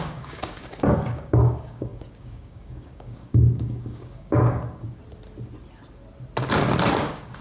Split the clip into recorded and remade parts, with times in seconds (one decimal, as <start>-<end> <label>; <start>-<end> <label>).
0.0-5.0 remade; 5.0-6.8 recorded; 6.8-7.4 remade